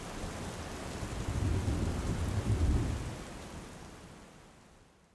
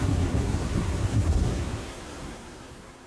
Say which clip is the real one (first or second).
first